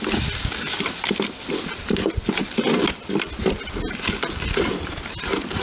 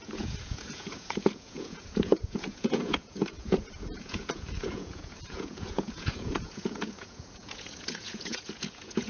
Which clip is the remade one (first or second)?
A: second